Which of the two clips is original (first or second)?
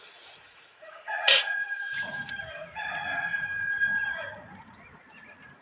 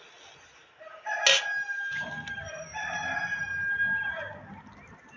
second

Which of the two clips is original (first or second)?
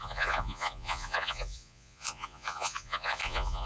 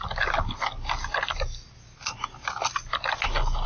second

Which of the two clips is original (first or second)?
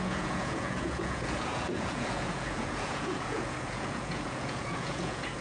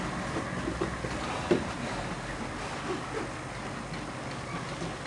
second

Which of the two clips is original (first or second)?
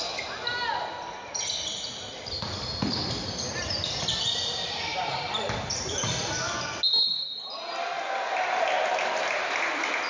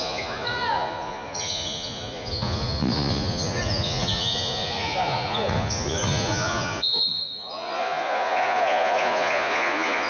first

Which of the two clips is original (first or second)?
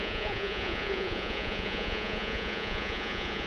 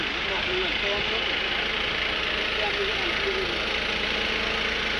second